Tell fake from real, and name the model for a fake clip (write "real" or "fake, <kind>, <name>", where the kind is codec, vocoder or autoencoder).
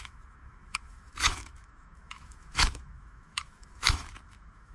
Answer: fake, autoencoder, DAC-VAE